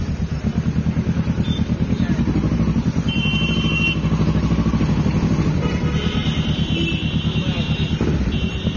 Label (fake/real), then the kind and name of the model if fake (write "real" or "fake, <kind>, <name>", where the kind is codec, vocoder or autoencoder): real